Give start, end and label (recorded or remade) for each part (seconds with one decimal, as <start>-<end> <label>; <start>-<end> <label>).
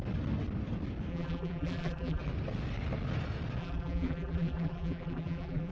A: 0.0-1.1 recorded; 1.1-2.2 remade; 2.2-3.6 recorded; 3.6-5.7 remade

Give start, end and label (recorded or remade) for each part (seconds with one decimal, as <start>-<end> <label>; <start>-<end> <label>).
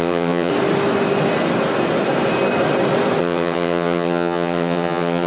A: 0.0-0.5 remade; 0.5-3.2 recorded; 3.2-5.3 remade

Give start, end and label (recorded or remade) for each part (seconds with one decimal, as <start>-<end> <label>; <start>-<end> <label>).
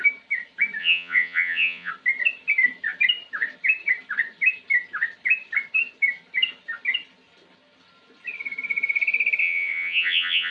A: 0.0-0.8 recorded; 0.8-1.9 remade; 1.9-9.4 recorded; 9.4-10.5 remade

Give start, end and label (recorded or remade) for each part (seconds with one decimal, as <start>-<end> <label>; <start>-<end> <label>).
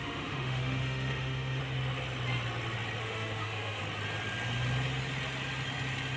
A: 0.0-1.6 remade; 1.6-3.0 recorded; 3.0-3.8 remade; 3.8-6.2 recorded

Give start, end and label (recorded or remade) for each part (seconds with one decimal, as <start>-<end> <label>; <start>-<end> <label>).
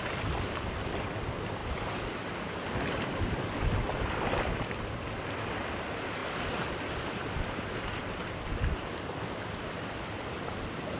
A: 0.0-11.0 recorded